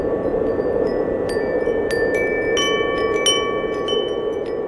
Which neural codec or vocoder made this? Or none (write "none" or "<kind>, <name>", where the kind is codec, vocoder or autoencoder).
none